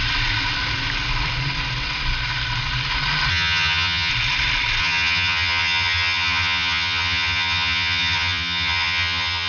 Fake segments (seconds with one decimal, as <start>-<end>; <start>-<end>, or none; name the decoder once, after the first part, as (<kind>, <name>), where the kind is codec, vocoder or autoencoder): 3.3-4.1 (vocoder, HiFi-GAN); 4.8-9.5

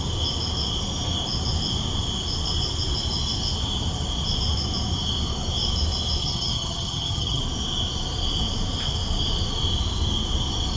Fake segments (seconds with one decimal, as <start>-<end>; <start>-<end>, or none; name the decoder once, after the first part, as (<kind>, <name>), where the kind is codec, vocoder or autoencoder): 6.2-7.4 (vocoder, HiFi-GAN)

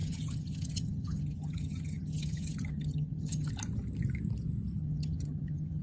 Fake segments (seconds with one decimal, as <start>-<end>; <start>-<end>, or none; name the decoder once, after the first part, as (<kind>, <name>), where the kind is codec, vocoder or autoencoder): 0.0-3.5 (vocoder, HiFi-GAN); 4.8-5.8